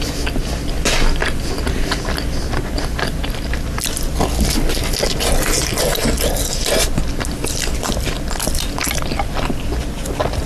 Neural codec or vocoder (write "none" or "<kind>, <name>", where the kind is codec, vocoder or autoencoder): none